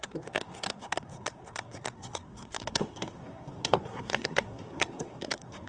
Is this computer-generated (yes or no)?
yes